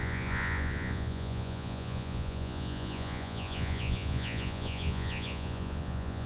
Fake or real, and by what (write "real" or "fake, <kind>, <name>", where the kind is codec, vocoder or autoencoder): fake, vocoder, Vocos